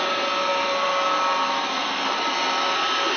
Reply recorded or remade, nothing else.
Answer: recorded